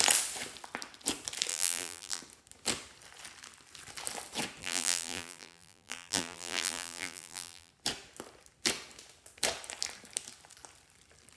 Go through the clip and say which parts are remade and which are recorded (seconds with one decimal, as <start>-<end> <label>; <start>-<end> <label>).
0.0-1.5 recorded; 1.5-2.2 remade; 2.2-4.6 recorded; 4.6-7.7 remade; 7.7-11.4 recorded